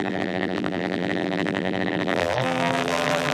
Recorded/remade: remade